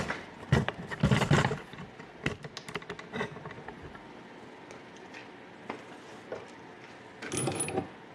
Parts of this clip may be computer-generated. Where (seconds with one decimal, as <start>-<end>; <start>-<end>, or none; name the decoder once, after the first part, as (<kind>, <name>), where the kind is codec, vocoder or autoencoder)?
none